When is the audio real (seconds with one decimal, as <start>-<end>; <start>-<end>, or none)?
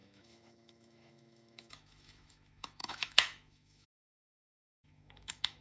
none